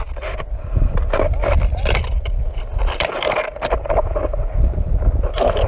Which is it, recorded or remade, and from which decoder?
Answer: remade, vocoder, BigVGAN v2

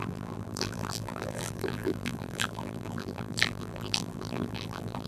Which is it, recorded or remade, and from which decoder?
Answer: remade, vocoder, BigVGAN v2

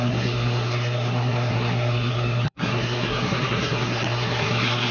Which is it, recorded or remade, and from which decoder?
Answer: remade, codec, SNAC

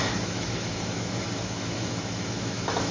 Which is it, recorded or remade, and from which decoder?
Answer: remade, autoencoder, DAC-VAE